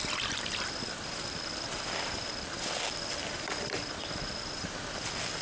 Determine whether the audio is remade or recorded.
recorded